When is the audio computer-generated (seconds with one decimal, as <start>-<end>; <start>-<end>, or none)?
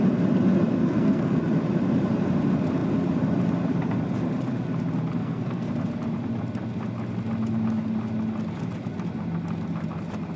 0.8-1.4; 5.2-5.7